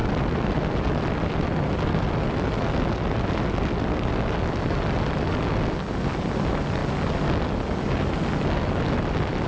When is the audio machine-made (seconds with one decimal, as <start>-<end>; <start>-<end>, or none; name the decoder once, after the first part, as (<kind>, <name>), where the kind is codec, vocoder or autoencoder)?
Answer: 0.0-2.1 (vocoder, BigVGAN v2)